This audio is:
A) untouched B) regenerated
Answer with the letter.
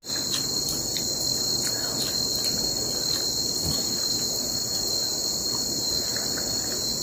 A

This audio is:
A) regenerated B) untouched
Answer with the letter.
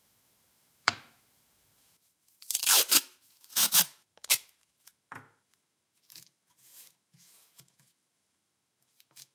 A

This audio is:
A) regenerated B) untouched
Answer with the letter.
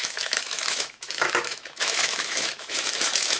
A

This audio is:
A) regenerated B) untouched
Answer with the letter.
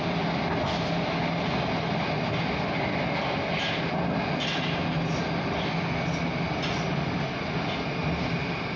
B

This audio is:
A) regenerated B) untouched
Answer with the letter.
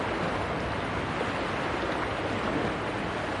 B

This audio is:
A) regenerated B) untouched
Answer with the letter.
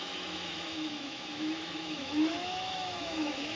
A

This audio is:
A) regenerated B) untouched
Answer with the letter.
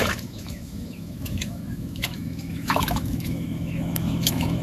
A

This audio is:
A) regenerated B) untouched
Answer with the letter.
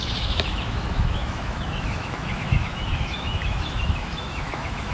A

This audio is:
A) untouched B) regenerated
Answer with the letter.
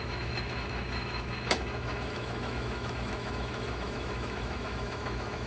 B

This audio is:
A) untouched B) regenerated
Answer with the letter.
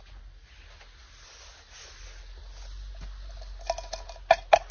A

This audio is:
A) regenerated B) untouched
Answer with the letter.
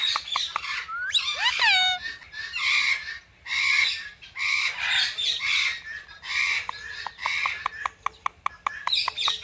B